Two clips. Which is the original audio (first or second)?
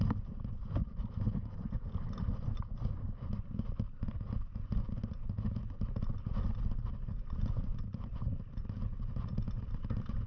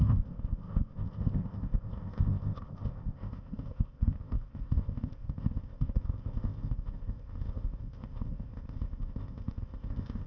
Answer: first